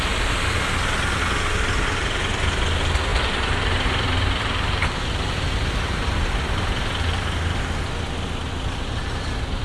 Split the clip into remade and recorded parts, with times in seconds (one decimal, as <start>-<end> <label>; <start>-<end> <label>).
0.0-3.1 recorded; 3.1-7.8 remade; 7.8-9.6 recorded